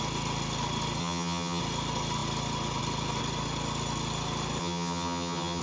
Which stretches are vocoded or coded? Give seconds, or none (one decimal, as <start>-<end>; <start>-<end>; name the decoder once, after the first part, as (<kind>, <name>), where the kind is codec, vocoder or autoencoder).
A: 1.0-1.6 (vocoder, HiFi-GAN); 4.6-5.6